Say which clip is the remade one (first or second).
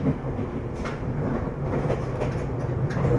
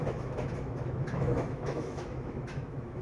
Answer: second